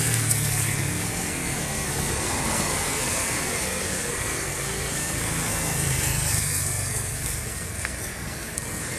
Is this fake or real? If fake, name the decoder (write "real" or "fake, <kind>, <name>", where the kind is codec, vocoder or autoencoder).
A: fake, codec, SNAC